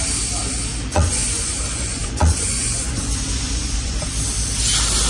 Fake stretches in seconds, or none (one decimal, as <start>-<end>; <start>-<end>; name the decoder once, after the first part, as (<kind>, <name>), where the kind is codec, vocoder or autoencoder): 0.9-4.0 (vocoder, Vocos)